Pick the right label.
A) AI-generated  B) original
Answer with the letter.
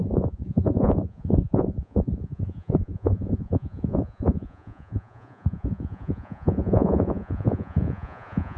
A